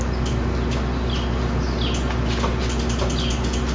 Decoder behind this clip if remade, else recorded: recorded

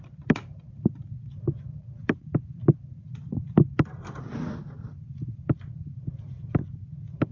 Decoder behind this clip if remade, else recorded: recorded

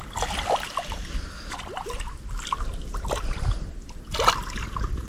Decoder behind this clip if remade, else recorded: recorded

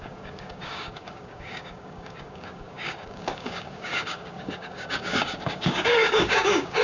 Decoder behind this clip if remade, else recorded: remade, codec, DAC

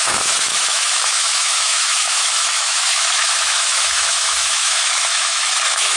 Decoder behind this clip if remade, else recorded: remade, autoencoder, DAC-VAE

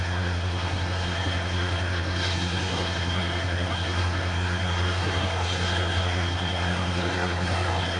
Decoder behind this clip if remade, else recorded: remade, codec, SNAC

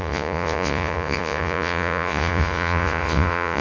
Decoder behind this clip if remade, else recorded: remade, vocoder, Vocos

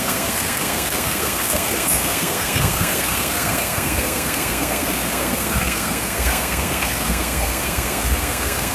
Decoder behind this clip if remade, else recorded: remade, codec, SNAC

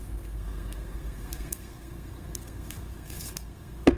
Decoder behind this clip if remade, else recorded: remade, codec, SNAC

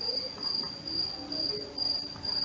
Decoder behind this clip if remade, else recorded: recorded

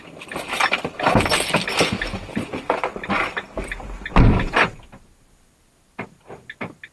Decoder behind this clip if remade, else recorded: recorded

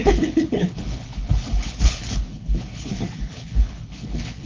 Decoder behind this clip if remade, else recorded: remade, codec, HILCodec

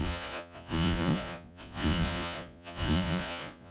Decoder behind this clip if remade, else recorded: remade, vocoder, Vocos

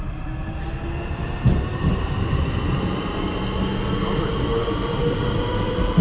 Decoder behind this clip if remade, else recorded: recorded